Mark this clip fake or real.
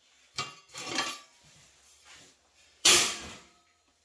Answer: fake